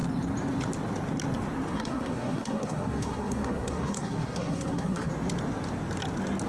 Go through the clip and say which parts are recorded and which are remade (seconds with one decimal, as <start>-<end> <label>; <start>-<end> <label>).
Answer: 0.0-1.7 recorded; 1.7-5.1 remade; 5.1-6.5 recorded